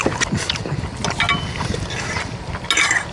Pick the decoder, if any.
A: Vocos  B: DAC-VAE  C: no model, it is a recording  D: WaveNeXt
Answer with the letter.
C